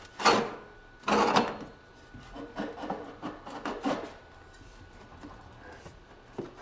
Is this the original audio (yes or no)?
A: yes